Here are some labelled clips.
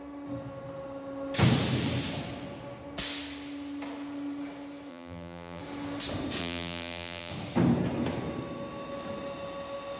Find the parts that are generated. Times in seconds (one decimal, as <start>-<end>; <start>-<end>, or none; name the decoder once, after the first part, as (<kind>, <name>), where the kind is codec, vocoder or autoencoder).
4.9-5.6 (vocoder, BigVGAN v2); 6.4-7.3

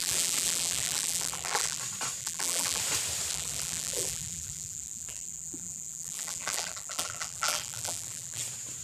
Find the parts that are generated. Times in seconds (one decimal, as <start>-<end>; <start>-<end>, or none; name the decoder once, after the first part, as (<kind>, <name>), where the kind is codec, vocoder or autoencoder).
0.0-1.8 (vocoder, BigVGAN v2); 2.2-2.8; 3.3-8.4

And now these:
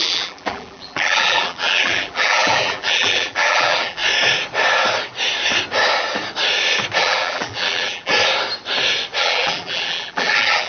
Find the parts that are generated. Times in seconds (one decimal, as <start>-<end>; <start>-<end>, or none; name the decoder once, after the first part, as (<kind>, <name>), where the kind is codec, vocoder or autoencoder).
0.0-4.0 (vocoder, BigVGAN v2); 7.0-8.1; 9.2-10.7

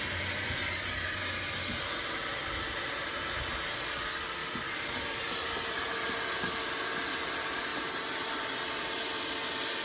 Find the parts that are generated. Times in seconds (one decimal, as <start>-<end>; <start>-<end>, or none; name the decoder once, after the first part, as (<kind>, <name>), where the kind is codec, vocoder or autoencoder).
4.4-6.2 (vocoder, BigVGAN v2); 7.7-9.8

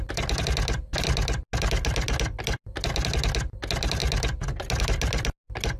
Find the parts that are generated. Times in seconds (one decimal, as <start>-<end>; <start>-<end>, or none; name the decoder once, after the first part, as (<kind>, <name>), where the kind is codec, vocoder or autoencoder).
none

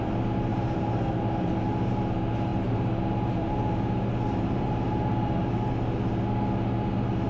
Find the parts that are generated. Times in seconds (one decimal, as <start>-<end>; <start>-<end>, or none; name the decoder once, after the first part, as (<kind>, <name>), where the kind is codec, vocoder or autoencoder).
0.5-1.9 (vocoder, BigVGAN v2); 2.5-5.7